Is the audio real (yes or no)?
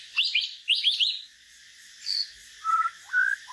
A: yes